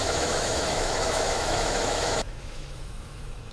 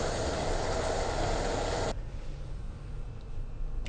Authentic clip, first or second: second